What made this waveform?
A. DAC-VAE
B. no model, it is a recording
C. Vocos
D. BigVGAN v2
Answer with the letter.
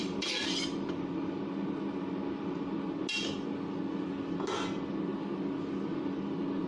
B